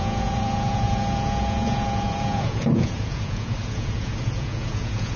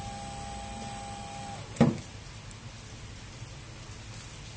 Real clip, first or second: second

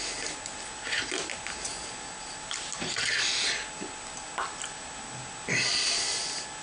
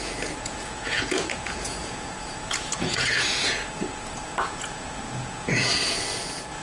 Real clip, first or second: first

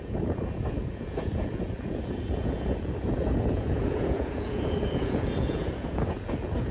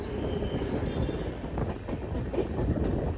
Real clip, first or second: second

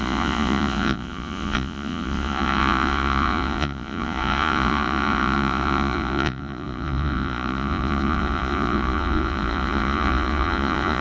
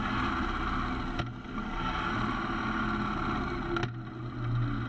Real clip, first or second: second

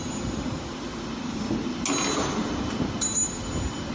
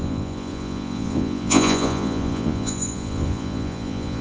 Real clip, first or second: first